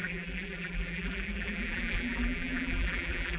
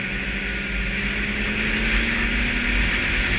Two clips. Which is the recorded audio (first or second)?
second